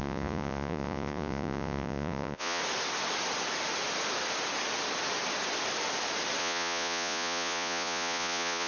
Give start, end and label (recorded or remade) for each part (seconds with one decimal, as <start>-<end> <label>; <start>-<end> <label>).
0.0-2.6 remade; 2.6-6.4 recorded; 6.4-8.7 remade